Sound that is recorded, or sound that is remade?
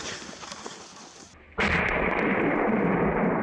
recorded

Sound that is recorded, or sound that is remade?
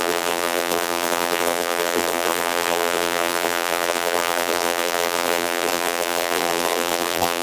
remade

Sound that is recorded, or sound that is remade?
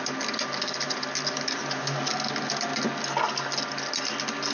recorded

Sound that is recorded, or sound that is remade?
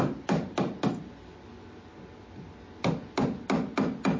recorded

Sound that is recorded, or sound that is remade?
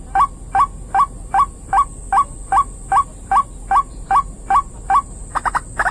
recorded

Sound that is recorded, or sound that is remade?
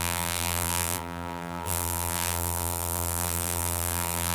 remade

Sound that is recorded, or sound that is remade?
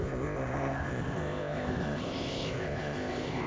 remade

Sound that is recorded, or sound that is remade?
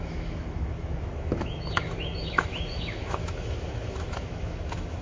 remade